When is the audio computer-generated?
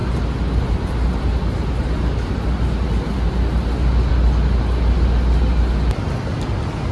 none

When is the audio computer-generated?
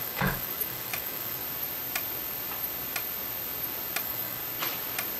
0.0-1.4 (autoencoder, DAC-VAE); 4.0-4.4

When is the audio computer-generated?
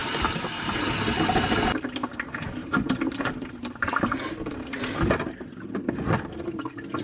0.0-0.9 (vocoder, BigVGAN v2); 2.6-4.0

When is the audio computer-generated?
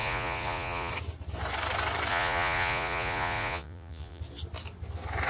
0.0-0.9 (vocoder, Vocos); 2.1-4.2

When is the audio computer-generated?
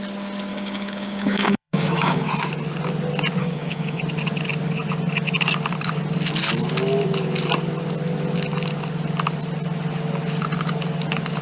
0.5-2.3 (codec, DAC); 3.4-4.0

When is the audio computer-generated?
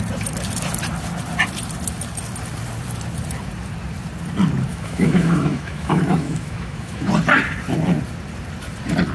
4.7-7.1 (autoencoder, DAC-VAE)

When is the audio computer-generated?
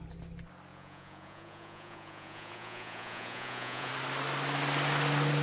0.7-3.9 (vocoder, Vocos)